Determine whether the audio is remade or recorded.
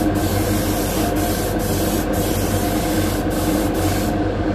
recorded